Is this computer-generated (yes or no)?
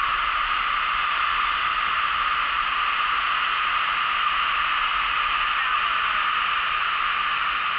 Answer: no